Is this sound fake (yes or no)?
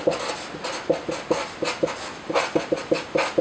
no